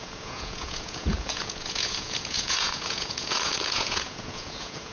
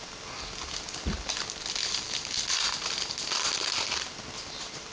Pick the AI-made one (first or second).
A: first